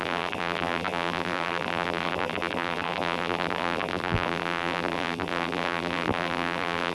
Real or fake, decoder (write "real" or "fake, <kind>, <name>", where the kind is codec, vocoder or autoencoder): fake, vocoder, BigVGAN v2